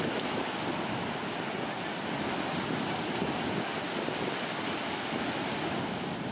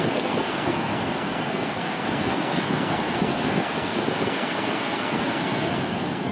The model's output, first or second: second